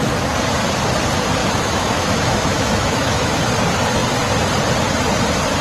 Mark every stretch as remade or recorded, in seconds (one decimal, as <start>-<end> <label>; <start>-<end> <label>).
0.0-1.4 recorded; 1.4-3.4 remade; 3.4-5.6 recorded